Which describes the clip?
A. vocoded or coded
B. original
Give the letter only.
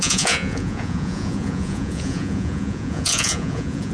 A